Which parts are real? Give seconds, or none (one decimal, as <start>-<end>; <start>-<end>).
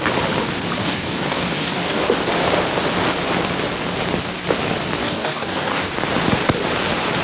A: 0.0-0.8; 2.0-5.0; 5.9-7.2